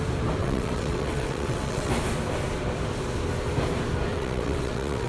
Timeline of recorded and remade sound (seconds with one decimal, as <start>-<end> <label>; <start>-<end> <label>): 0.0-0.4 recorded; 0.4-1.9 remade; 1.9-4.1 recorded; 4.1-5.1 remade